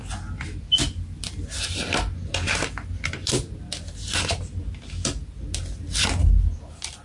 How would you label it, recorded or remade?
recorded